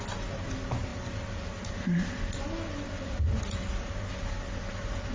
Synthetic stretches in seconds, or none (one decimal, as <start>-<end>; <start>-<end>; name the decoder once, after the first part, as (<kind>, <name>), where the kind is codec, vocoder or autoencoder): none